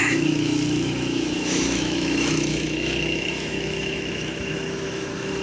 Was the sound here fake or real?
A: fake